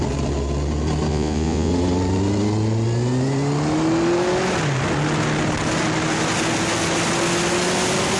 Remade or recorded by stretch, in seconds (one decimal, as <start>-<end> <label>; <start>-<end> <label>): 0.0-1.1 recorded; 1.1-1.7 remade; 1.7-8.2 recorded